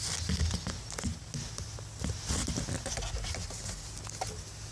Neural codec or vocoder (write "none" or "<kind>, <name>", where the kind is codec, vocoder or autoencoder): none